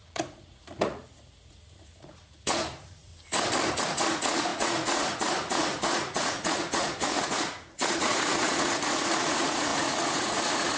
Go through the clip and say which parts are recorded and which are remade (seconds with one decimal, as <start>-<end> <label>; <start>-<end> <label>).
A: 0.0-3.1 remade; 3.1-3.7 recorded; 3.7-10.8 remade